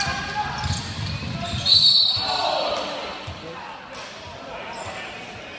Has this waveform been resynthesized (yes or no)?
no